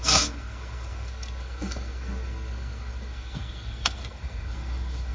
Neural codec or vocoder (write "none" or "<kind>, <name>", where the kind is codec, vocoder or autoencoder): codec, SNAC